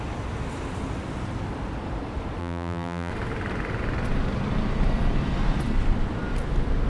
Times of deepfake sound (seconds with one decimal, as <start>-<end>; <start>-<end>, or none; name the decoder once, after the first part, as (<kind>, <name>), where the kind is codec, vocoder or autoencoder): 2.4-3.1 (vocoder, BigVGAN v2)